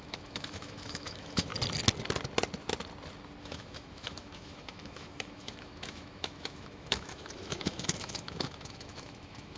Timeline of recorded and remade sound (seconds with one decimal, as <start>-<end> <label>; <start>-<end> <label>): 0.0-1.5 remade; 1.5-3.4 recorded; 3.4-9.6 remade